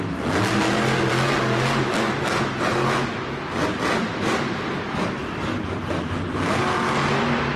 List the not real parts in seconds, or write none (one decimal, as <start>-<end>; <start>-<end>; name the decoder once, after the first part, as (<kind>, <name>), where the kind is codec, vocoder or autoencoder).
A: 4.0-4.8 (vocoder, BigVGAN v2); 5.2-6.0